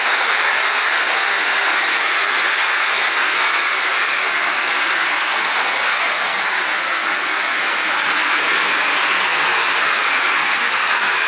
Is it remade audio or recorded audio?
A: remade